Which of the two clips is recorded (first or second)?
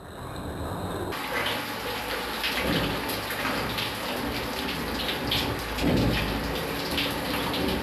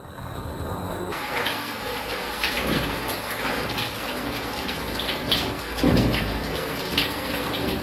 first